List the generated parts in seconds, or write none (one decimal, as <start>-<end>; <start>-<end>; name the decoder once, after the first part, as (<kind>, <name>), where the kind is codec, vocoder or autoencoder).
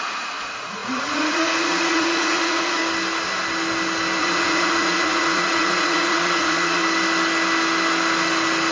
0.0-2.8 (vocoder, Vocos); 4.2-6.8